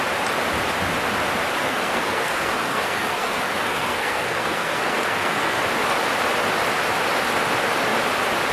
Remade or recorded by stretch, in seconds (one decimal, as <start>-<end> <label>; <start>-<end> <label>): 0.0-1.6 recorded; 1.6-5.6 remade; 5.6-8.5 recorded